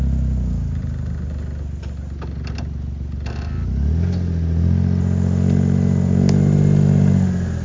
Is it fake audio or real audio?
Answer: real